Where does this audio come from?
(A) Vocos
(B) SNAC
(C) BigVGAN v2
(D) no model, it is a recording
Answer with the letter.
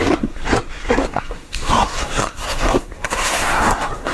B